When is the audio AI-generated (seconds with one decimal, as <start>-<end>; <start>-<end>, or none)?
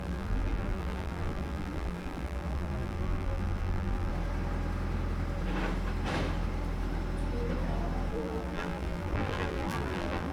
0.0-4.1; 8.1-10.3